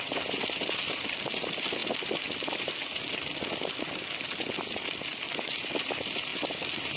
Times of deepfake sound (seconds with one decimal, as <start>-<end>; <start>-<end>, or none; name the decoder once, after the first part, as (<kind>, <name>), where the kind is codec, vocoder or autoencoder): none